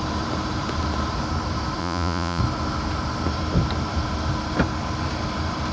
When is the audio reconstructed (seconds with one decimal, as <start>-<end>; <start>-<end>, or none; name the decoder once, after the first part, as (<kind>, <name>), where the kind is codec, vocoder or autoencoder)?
1.8-2.4 (vocoder, Vocos)